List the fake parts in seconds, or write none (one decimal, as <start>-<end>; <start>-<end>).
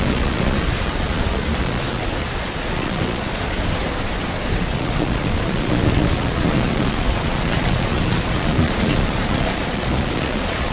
0.0-3.6; 4.6-10.7